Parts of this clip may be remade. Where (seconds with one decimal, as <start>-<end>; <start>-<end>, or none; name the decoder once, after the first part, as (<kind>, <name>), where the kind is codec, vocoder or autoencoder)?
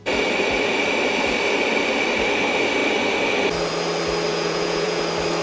4.3-5.0 (vocoder, Vocos)